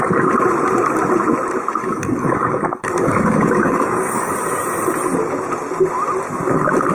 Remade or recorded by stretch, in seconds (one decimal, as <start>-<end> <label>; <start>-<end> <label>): 0.0-1.8 recorded; 1.8-4.3 remade; 4.3-6.9 recorded